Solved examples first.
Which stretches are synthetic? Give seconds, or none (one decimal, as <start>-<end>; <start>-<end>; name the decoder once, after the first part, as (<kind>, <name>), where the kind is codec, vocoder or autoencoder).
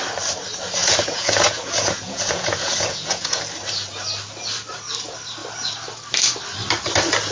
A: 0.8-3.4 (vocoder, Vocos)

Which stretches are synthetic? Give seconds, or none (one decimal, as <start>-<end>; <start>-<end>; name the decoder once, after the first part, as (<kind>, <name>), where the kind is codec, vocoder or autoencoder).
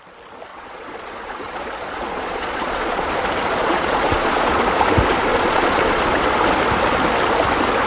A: 0.5-3.1 (vocoder, Vocos); 3.6-4.6; 5.3-6.1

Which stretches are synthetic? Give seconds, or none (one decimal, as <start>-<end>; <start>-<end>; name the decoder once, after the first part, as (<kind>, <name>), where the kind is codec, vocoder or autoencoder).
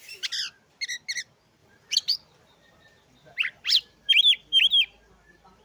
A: 1.6-4.1 (vocoder, BigVGAN v2)